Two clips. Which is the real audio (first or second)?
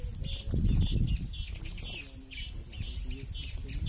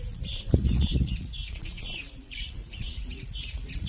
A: first